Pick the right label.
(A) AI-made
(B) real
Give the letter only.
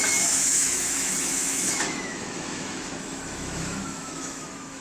A